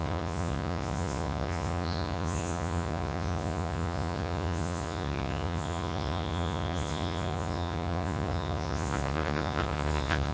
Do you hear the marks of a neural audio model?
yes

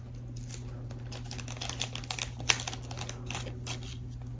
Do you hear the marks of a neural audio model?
no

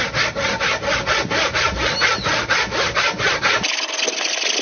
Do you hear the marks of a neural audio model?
no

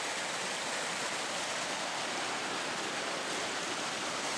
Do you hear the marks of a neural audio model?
no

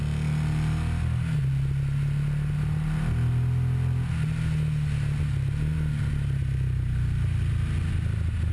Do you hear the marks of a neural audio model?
no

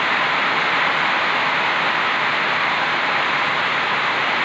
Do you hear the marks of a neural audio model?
no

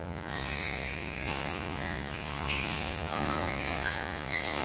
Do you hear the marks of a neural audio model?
yes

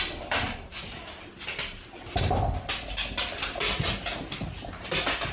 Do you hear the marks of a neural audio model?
no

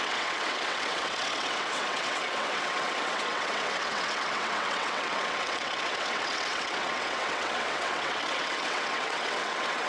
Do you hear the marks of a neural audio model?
yes